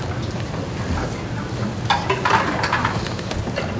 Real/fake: real